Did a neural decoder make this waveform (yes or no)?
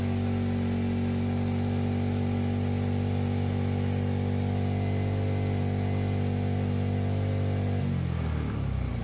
no